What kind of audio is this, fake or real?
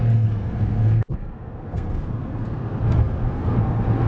fake